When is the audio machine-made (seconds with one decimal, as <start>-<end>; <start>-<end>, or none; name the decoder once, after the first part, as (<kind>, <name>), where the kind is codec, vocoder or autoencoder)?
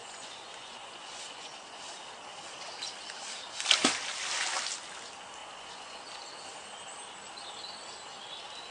0.0-1.8 (vocoder, Vocos); 5.4-6.0